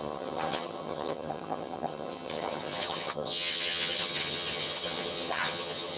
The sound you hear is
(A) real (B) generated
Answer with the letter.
B